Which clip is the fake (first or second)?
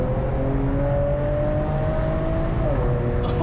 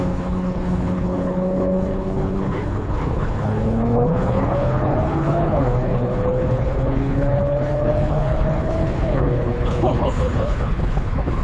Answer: second